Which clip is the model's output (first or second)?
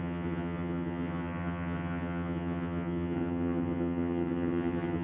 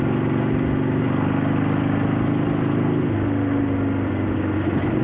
first